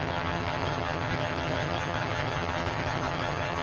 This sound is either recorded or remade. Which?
remade